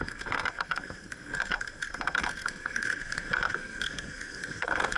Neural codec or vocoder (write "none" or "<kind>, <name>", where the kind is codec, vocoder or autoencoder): codec, SNAC